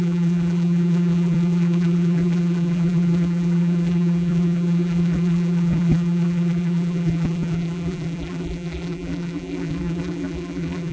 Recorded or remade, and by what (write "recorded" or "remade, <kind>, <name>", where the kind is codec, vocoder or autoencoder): remade, vocoder, BigVGAN v2